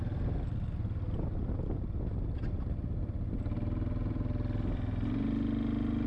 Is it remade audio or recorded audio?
recorded